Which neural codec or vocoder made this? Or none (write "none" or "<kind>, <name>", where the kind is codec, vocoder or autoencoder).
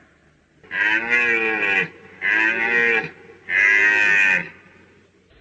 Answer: none